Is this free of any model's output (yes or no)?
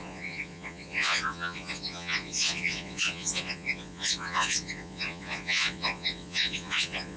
no